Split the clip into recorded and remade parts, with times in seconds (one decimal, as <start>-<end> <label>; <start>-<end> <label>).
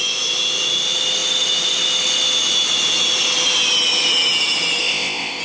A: 0.0-4.8 recorded; 4.8-5.4 remade